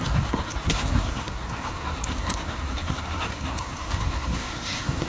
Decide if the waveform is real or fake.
fake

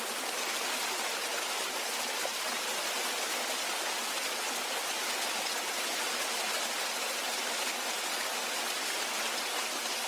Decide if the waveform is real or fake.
real